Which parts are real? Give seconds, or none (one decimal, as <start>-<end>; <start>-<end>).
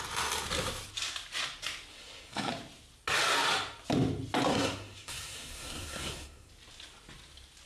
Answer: 0.0-1.9; 2.5-4.5; 6.5-7.7